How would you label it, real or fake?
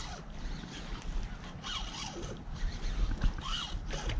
real